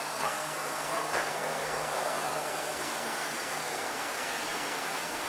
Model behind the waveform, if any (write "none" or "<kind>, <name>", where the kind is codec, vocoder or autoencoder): codec, SNAC